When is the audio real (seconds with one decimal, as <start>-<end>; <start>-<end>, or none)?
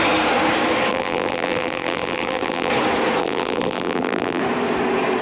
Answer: 0.0-0.9; 2.7-3.2; 4.4-5.2